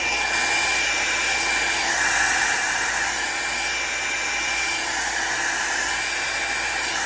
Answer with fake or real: real